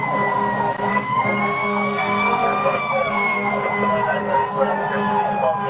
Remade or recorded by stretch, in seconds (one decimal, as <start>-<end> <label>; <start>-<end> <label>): 0.0-0.9 recorded; 0.9-3.5 remade; 3.5-4.2 recorded; 4.2-4.8 remade; 4.8-5.7 recorded

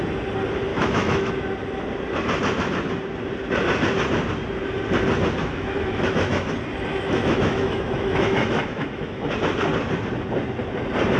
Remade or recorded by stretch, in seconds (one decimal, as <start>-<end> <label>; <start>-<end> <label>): 0.0-0.7 recorded; 0.7-1.3 remade; 1.3-5.4 recorded; 5.4-6.5 remade; 6.5-6.9 recorded; 6.9-9.3 remade; 9.3-11.2 recorded

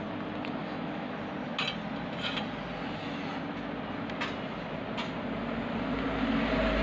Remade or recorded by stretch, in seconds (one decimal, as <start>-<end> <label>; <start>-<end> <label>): 0.0-0.6 recorded; 0.6-1.1 remade; 1.1-6.8 recorded

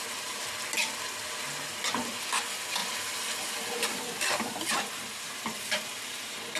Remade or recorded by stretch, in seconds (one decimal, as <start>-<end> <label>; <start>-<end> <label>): 0.0-2.8 recorded; 2.8-6.6 remade

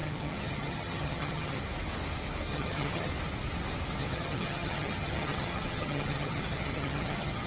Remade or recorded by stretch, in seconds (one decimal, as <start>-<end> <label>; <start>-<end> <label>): 0.0-1.6 remade; 1.6-2.5 recorded; 2.5-3.1 remade; 3.1-4.0 recorded; 4.0-7.5 remade

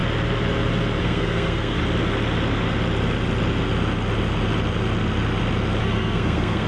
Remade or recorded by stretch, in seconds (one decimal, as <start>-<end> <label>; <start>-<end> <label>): 0.0-1.0 recorded; 1.0-1.8 remade; 1.8-5.8 recorded; 5.8-6.7 remade